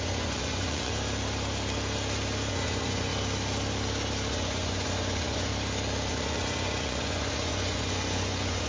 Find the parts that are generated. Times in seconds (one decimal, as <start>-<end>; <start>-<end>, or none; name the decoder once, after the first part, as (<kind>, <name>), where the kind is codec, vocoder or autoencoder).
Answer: 0.0-0.9 (vocoder, Vocos); 2.5-3.1; 4.3-5.5; 6.1-8.7